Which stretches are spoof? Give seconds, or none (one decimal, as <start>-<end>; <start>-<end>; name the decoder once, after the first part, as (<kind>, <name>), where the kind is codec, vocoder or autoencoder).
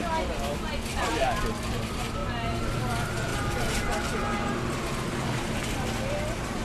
0.9-1.4 (vocoder, BigVGAN v2); 2.2-2.8; 3.3-5.6